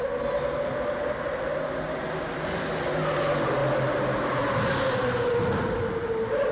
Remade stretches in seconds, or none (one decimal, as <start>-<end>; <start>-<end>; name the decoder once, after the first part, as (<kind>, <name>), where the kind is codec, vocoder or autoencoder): none